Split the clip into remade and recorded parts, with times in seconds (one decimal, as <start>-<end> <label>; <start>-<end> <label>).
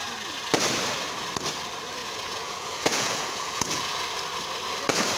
0.0-2.0 recorded; 2.0-3.9 remade; 3.9-5.2 recorded